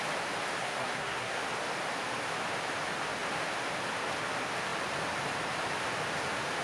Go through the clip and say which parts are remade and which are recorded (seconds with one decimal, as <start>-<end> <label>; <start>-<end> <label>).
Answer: 0.0-0.6 recorded; 0.6-1.4 remade; 1.4-6.6 recorded